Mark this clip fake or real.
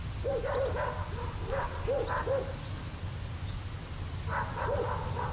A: real